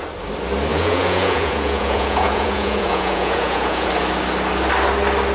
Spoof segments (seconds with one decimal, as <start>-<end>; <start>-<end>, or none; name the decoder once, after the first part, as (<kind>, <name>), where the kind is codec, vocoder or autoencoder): 0.7-3.9 (vocoder, Vocos)

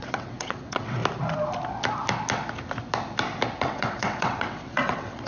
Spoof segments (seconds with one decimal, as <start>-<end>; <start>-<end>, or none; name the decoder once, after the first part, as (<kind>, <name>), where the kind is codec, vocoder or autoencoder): 0.0-1.0 (vocoder, WaveNeXt); 3.6-5.3